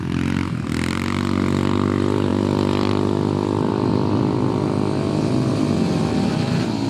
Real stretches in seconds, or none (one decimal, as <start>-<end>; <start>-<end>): 0.0-2.3; 3.7-6.9